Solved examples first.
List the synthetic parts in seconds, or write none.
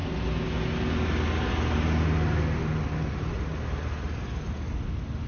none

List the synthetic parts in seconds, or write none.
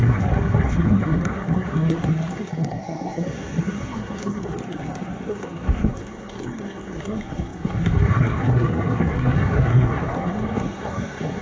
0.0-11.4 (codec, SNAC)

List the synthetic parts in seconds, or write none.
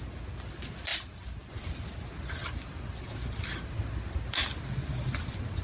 none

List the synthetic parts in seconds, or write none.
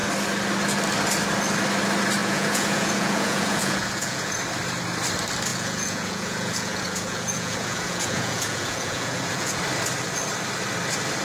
2.2-4.3 (vocoder, Vocos); 5.5-9.6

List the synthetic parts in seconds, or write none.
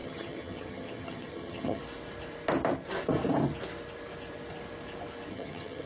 0.0-1.8 (vocoder, HiFi-GAN); 5.3-5.9